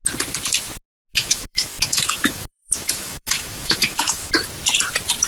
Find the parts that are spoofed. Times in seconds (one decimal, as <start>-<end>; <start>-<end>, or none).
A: 1.1-4.3